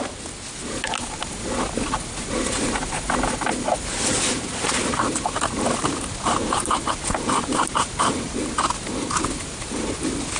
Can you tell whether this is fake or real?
real